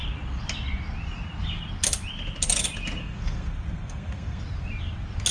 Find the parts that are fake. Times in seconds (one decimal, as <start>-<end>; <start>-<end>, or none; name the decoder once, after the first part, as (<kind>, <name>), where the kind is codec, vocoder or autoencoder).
3.0-4.4 (codec, SNAC)